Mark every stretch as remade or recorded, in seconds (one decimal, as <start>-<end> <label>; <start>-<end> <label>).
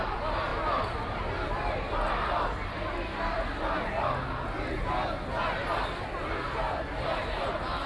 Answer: 0.0-7.9 recorded